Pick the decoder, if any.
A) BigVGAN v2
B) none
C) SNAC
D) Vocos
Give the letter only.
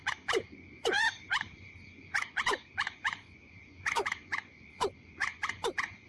D